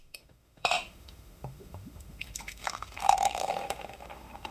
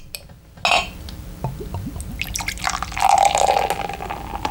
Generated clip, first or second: first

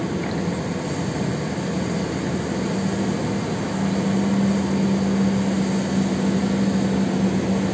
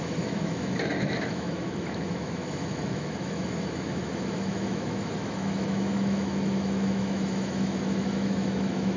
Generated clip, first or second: second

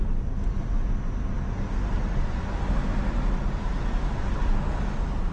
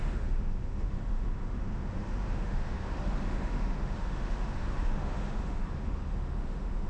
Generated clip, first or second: second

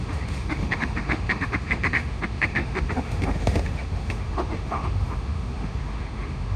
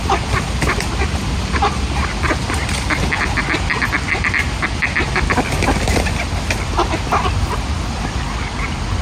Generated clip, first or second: first